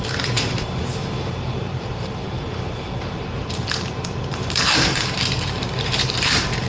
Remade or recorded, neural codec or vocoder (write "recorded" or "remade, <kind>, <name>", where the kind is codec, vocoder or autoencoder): remade, vocoder, BigVGAN v2